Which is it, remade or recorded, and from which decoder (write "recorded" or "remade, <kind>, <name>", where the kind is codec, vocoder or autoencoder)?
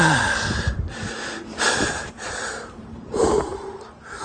remade, vocoder, BigVGAN v2